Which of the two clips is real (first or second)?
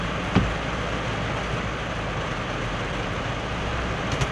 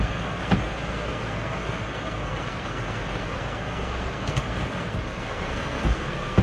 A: first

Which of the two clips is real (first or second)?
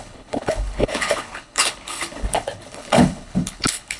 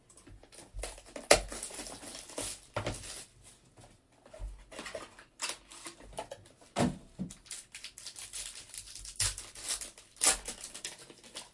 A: second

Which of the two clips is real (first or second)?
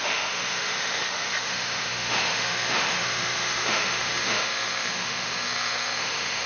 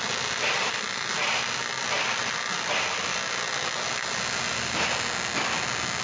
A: second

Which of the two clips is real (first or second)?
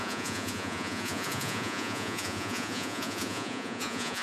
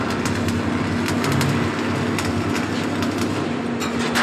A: second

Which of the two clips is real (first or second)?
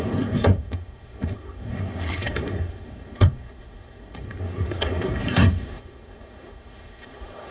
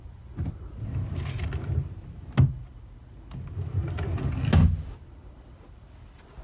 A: second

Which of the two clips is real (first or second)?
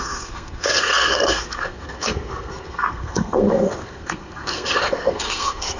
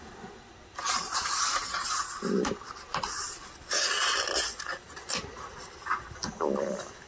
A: second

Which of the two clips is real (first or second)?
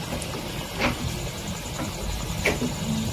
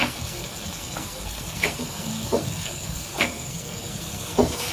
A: first